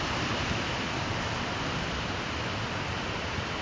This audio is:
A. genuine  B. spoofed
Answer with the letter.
A